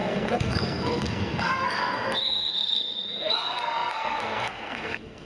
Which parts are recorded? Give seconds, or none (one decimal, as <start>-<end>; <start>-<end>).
none